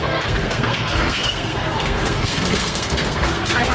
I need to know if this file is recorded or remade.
remade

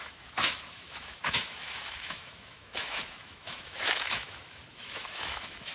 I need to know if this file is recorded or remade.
remade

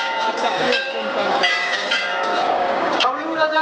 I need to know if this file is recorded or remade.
remade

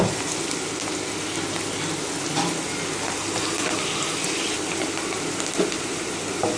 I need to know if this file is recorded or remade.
recorded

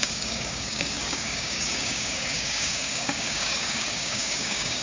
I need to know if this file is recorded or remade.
remade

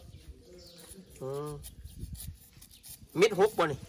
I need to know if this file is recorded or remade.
recorded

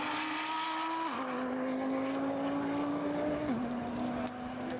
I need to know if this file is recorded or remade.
recorded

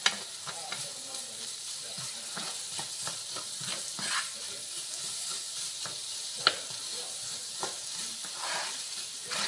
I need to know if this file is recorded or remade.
remade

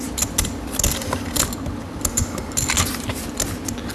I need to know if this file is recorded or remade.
recorded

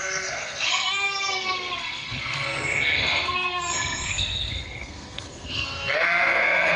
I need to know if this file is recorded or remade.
remade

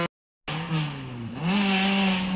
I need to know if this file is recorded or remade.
recorded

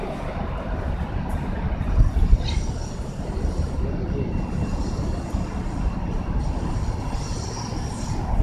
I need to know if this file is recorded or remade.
recorded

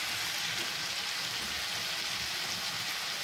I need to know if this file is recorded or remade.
recorded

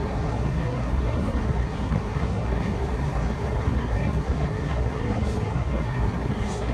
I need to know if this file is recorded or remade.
remade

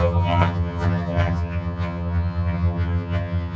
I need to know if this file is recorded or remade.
remade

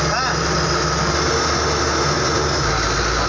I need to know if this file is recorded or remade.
recorded